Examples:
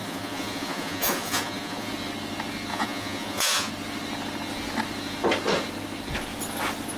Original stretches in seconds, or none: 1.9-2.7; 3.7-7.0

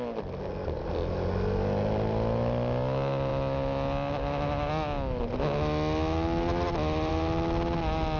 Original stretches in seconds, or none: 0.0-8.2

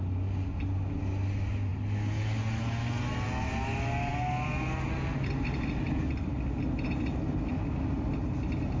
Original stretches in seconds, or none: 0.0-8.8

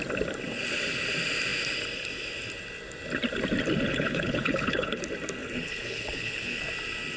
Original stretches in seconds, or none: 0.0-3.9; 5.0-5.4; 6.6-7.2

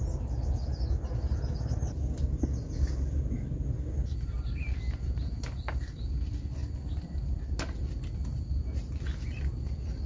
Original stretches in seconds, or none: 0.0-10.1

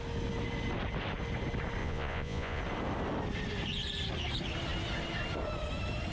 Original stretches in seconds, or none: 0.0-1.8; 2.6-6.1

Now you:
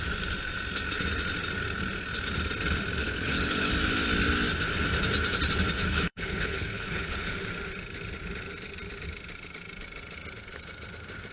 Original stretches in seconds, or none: 0.0-3.0; 3.7-5.9; 7.3-11.3